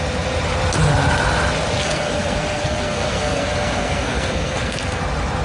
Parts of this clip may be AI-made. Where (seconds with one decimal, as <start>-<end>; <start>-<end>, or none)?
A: 1.8-5.0